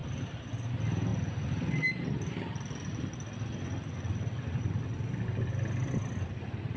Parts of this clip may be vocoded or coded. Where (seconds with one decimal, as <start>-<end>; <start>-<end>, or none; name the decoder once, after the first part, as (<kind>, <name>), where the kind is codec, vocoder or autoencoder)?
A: none